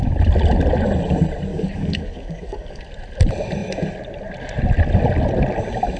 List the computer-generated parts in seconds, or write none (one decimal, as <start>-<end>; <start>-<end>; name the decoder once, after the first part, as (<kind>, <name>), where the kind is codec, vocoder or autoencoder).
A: 1.5-2.8 (codec, DAC)